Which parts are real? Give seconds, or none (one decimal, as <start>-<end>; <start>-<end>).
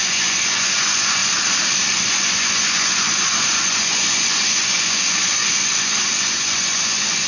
1.2-1.9